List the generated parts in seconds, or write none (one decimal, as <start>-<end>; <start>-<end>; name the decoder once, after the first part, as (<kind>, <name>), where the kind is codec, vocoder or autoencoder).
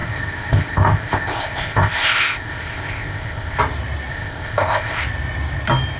0.0-3.6 (codec, ZipCodec); 4.1-5.0